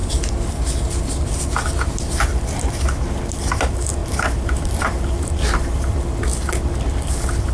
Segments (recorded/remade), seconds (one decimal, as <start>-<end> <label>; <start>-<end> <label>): 0.0-7.5 recorded